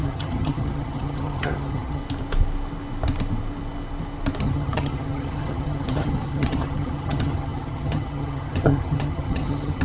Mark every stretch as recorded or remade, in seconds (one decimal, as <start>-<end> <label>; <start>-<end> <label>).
0.0-2.0 remade; 2.0-4.4 recorded; 4.4-9.8 remade